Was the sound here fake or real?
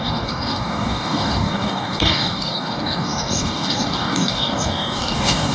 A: fake